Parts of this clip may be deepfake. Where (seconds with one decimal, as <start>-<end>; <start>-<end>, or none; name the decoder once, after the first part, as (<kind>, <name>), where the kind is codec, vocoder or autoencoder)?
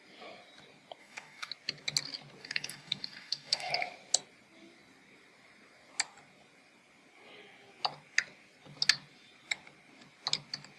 1.0-1.5 (codec, DAC); 2.4-3.7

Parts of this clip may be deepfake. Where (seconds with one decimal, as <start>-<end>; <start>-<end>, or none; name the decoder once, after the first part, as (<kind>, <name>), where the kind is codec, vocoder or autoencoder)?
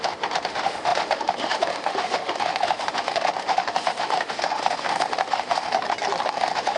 0.0-5.7 (autoencoder, DAC-VAE); 6.3-6.8